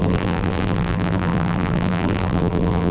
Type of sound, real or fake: fake